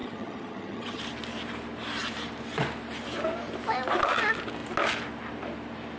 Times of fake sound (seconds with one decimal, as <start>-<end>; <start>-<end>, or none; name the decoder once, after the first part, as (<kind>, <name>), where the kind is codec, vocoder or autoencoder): 0.0-1.0 (vocoder, HiFi-GAN)